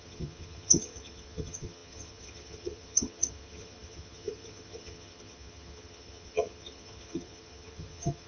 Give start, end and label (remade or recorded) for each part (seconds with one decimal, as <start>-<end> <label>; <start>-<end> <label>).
0.0-8.3 remade